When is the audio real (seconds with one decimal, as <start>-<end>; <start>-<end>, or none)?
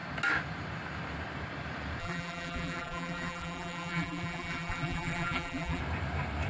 0.0-2.0; 5.8-6.5